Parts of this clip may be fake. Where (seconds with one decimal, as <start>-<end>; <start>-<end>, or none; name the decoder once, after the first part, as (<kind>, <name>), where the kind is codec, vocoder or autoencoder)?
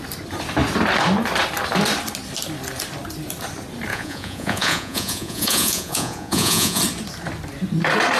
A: 3.9-6.8 (vocoder, Vocos)